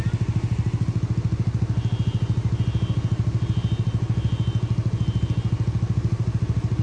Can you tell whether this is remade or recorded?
recorded